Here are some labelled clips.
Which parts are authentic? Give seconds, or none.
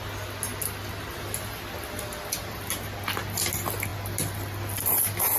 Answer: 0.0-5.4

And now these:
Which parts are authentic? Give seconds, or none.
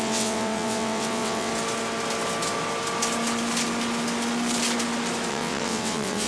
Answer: 1.5-5.3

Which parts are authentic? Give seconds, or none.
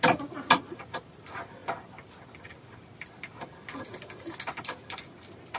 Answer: 0.0-5.6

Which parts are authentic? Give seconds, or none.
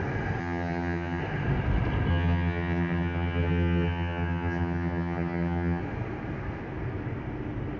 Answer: 0.0-0.4; 1.2-2.1; 5.8-7.8